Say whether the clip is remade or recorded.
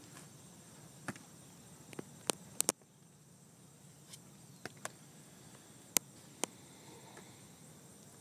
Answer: recorded